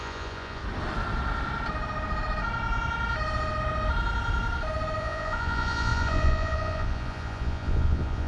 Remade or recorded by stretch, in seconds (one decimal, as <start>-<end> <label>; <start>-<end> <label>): 0.0-0.6 remade; 0.6-5.0 recorded; 5.0-8.3 remade